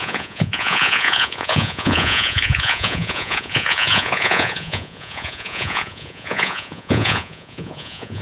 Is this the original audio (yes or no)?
no